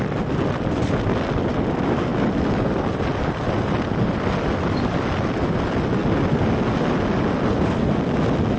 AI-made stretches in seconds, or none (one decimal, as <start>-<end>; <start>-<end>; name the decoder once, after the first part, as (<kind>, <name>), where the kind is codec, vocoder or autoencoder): none